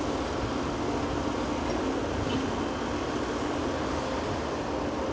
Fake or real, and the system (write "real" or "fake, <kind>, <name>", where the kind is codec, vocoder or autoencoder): real